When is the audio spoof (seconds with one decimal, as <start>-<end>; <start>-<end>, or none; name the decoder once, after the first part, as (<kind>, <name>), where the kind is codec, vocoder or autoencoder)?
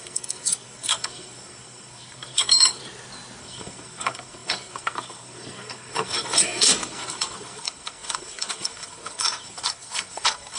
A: 0.0-2.8 (codec, SNAC); 3.4-10.6